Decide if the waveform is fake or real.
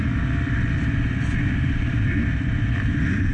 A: real